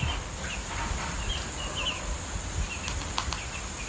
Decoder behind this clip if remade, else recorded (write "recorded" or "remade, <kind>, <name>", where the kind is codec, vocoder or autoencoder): recorded